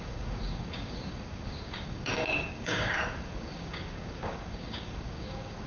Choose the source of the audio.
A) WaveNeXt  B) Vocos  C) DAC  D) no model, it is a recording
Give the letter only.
C